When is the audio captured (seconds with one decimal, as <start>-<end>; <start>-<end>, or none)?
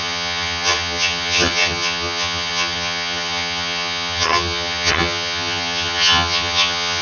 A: none